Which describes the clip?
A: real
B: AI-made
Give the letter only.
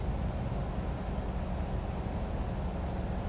A